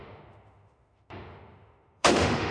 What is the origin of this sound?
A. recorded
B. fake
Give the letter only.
B